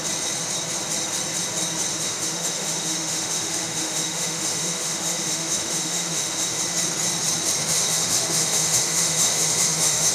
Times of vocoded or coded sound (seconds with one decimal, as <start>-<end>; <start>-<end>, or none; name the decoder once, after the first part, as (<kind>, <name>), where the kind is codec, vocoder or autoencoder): 1.9-6.6 (autoencoder, DAC-VAE); 7.6-10.1